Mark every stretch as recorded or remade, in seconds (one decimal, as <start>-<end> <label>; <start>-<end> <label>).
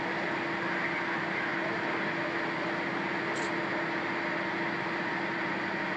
0.0-6.0 recorded